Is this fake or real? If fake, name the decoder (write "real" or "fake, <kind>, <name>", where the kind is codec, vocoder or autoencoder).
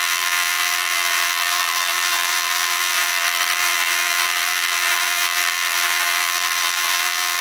fake, vocoder, BigVGAN v2